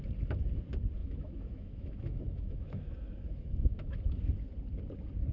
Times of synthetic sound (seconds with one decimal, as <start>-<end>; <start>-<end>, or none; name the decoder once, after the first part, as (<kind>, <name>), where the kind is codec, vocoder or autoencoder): 1.0-4.2 (autoencoder, DAC-VAE)